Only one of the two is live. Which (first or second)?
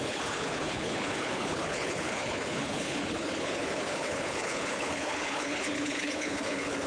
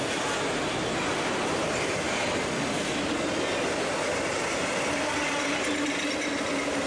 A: second